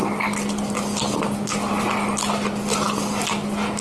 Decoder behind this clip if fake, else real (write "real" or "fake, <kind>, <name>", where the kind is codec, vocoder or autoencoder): real